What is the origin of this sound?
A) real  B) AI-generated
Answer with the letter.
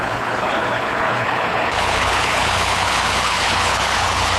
B